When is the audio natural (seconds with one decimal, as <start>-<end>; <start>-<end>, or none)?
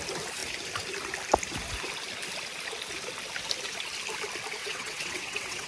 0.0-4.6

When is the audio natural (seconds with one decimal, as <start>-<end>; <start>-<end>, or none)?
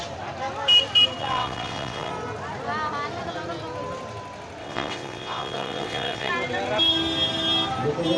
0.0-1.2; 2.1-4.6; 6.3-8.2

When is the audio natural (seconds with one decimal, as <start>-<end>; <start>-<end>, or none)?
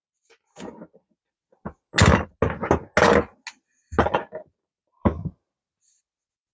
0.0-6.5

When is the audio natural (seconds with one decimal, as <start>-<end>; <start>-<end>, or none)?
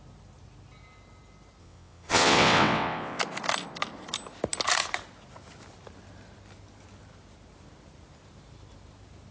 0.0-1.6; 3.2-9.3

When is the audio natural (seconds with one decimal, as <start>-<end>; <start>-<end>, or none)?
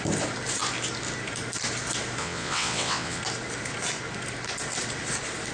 0.0-2.2; 3.2-5.5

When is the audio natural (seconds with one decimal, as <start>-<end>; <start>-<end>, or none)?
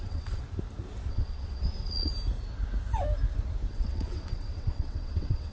0.4-1.1; 2.1-3.7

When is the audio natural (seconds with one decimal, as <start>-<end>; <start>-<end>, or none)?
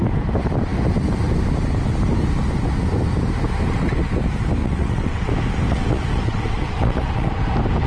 0.0-4.6; 5.3-5.7; 7.3-7.9